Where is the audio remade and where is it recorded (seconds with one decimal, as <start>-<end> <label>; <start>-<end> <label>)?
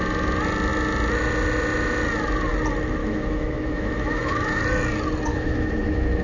0.0-3.0 recorded; 3.0-4.6 remade; 4.6-5.3 recorded; 5.3-6.2 remade